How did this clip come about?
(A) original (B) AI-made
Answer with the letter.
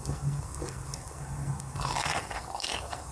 B